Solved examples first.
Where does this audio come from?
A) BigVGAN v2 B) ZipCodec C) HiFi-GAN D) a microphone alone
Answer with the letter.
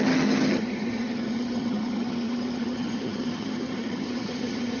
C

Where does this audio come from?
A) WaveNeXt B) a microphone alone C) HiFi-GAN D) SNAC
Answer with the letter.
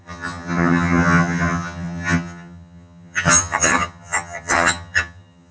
C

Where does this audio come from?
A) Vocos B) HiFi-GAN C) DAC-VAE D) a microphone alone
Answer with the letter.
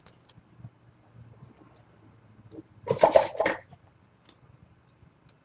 D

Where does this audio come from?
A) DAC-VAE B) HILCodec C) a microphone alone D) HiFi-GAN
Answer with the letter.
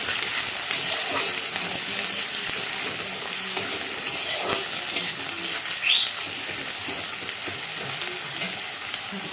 C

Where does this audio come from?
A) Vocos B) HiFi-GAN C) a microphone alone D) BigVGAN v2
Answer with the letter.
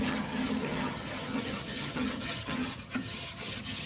B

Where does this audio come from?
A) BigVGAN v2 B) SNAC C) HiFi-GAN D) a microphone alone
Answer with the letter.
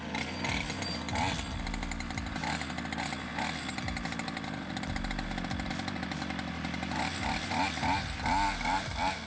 D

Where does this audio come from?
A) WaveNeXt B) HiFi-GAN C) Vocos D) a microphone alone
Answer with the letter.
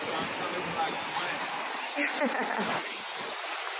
D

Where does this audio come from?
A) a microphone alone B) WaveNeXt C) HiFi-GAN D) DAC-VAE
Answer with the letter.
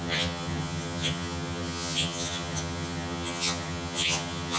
C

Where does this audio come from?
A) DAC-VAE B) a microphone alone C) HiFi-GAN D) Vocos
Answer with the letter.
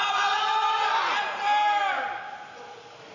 B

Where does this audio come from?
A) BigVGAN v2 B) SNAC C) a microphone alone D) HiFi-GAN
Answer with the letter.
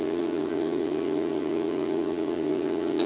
D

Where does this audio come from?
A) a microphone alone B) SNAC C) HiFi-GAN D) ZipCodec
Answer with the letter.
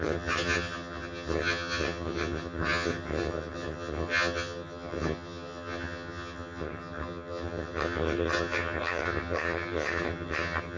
C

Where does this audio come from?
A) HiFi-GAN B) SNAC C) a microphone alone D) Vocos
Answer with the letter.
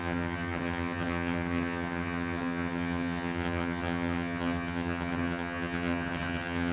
A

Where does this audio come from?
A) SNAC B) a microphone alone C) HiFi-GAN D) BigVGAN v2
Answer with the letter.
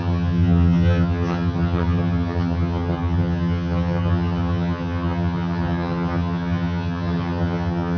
C